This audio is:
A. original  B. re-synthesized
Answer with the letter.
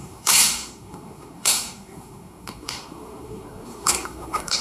B